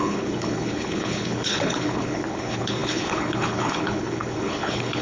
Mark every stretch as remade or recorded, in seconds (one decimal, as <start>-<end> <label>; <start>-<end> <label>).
0.0-5.0 remade